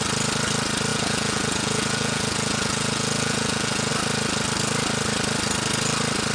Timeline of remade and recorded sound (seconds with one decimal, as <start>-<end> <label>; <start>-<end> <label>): 0.0-0.9 recorded; 0.9-3.9 remade; 3.9-6.3 recorded